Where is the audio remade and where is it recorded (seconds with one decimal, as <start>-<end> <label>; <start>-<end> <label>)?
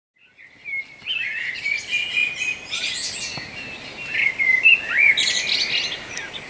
0.0-6.5 recorded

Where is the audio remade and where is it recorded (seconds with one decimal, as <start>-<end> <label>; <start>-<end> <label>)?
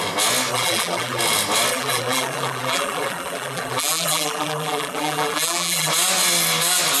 0.0-0.5 recorded; 0.5-1.2 remade; 1.2-1.7 recorded; 1.7-5.9 remade; 5.9-7.0 recorded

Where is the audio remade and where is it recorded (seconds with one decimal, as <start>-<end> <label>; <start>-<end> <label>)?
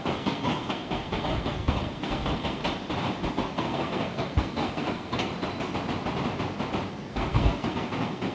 0.0-2.6 remade; 2.6-3.3 recorded; 3.3-5.3 remade; 5.3-6.9 recorded; 6.9-8.3 remade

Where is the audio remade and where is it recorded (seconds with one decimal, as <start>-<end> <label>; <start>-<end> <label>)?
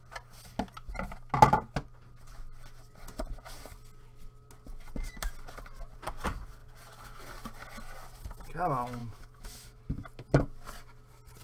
0.0-9.0 recorded; 9.0-9.8 remade; 9.8-11.4 recorded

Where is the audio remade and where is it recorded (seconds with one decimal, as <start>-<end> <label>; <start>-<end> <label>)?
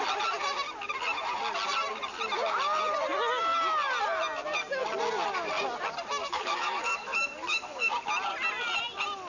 0.0-6.2 recorded; 6.2-7.9 remade; 7.9-9.3 recorded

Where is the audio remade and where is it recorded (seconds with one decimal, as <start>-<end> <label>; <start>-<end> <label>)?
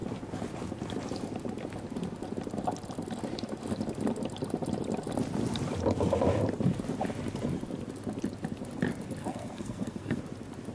0.0-9.2 recorded; 9.2-10.2 remade; 10.2-10.7 recorded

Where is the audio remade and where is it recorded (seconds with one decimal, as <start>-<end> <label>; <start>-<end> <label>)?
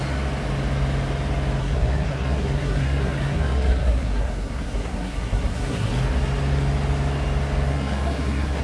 0.0-1.6 recorded; 1.6-5.9 remade; 5.9-7.7 recorded; 7.7-8.6 remade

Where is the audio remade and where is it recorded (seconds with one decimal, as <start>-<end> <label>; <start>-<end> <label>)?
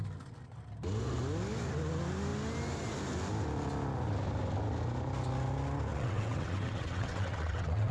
0.0-5.9 recorded; 5.9-7.9 remade